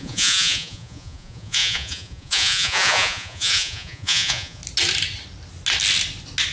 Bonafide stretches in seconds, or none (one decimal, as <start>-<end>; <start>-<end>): 4.6-6.5